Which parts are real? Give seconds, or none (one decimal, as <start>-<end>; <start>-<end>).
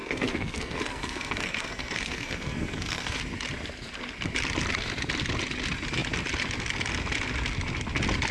3.2-8.3